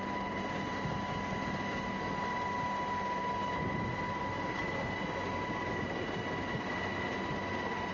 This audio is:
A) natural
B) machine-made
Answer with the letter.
A